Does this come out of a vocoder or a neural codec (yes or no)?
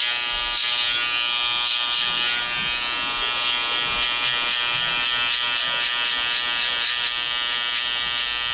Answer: no